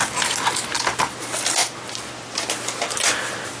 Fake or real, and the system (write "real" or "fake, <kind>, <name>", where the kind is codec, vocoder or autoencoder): real